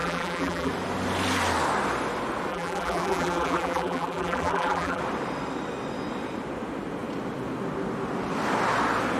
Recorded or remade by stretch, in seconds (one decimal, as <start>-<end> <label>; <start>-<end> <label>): 0.0-0.7 remade; 0.7-2.5 recorded; 2.5-5.0 remade; 5.0-9.2 recorded

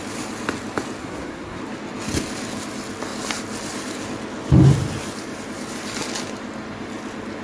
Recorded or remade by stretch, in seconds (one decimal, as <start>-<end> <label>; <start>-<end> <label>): 0.0-1.0 recorded; 1.0-1.6 remade; 1.6-7.4 recorded

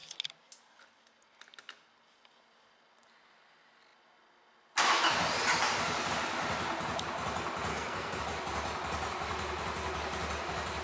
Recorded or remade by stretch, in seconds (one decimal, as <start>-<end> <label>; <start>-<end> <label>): 0.0-7.7 recorded; 7.7-8.2 remade; 8.2-10.8 recorded

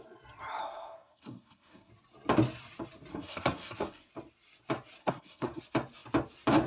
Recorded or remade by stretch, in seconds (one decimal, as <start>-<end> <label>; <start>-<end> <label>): 0.0-0.6 recorded; 0.6-1.9 remade; 1.9-3.1 recorded; 3.1-4.1 remade; 4.1-5.0 recorded; 5.0-5.6 remade; 5.6-6.7 recorded

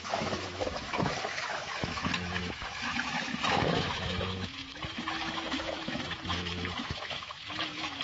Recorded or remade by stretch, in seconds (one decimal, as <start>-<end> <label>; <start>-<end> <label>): 0.0-8.0 remade